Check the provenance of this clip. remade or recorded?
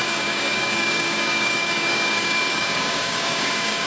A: remade